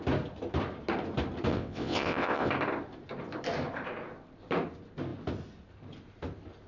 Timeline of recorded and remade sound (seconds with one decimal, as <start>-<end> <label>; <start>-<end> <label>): 0.0-1.5 recorded; 1.5-2.5 remade; 2.5-6.7 recorded